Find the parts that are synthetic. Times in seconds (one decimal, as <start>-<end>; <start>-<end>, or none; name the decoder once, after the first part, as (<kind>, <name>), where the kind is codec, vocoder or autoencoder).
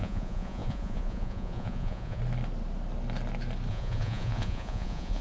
0.0-2.2 (vocoder, Vocos); 3.7-5.2